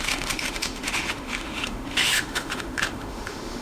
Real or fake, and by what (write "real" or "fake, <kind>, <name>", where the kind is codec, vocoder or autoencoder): fake, autoencoder, DAC-VAE